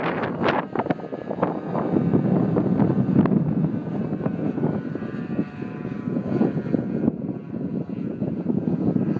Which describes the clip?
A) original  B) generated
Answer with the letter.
A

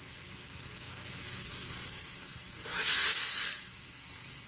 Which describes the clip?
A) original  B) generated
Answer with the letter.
B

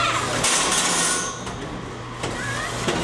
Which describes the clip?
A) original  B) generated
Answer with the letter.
A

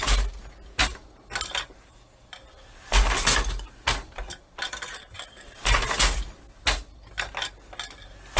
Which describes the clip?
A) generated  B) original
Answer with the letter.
B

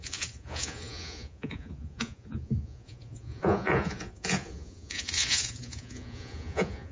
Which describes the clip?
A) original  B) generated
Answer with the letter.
B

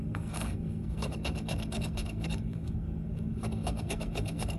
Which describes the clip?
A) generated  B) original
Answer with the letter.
A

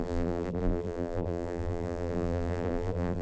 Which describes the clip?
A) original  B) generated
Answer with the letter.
B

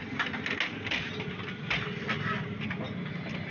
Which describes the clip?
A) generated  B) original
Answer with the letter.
B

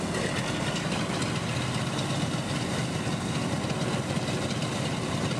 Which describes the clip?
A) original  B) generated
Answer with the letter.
A